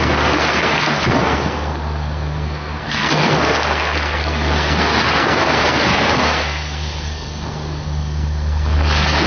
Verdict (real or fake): fake